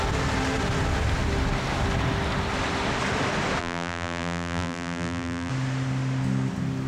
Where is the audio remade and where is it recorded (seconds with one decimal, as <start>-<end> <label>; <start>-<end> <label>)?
0.0-3.6 recorded; 3.6-5.5 remade; 5.5-6.9 recorded